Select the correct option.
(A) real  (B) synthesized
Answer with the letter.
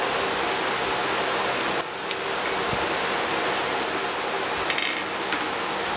A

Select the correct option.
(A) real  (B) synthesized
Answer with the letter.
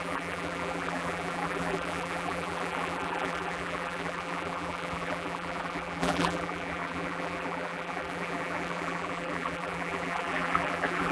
B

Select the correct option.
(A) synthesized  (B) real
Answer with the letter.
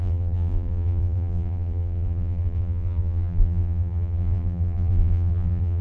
A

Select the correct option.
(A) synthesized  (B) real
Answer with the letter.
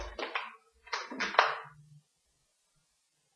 B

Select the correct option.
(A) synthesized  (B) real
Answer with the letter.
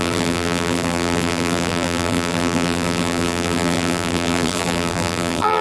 A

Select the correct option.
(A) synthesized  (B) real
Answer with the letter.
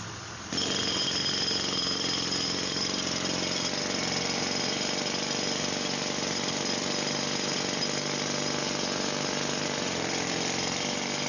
B